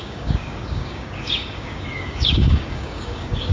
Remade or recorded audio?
remade